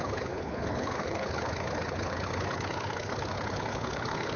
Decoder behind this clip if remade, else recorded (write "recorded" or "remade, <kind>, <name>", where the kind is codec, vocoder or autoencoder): remade, codec, HILCodec